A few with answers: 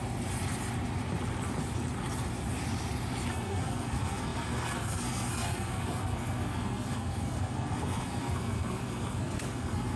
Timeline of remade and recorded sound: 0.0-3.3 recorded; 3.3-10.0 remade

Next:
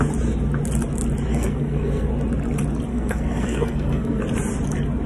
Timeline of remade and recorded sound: 0.0-1.3 recorded; 1.3-2.1 remade; 2.1-2.9 recorded; 2.9-4.2 remade; 4.2-5.1 recorded

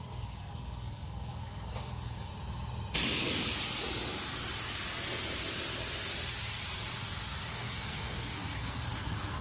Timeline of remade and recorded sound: 0.0-2.3 remade; 2.3-7.5 recorded; 7.5-9.4 remade

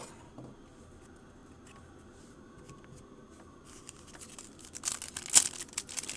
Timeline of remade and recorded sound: 0.0-6.2 recorded

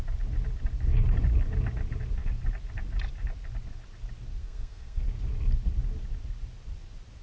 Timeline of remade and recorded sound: 0.0-4.4 recorded; 4.4-5.0 remade; 5.0-7.2 recorded

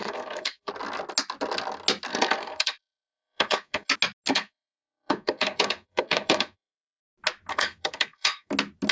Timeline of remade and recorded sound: 0.0-0.7 remade; 0.7-2.1 recorded; 2.1-3.9 remade; 3.9-4.3 recorded; 4.3-7.0 remade; 7.0-7.5 recorded; 7.5-8.5 remade; 8.5-8.9 recorded

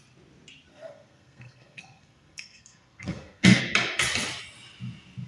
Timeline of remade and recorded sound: 0.0-0.7 recorded; 0.7-3.6 remade; 3.6-5.3 recorded